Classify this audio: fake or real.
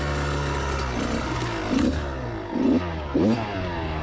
real